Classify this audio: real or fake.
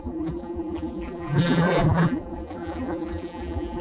fake